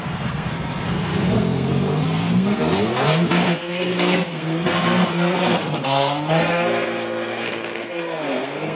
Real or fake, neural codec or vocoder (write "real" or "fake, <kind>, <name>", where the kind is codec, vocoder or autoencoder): fake, codec, SNAC